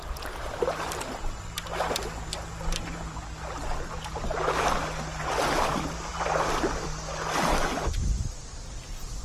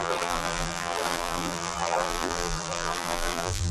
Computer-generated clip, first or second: second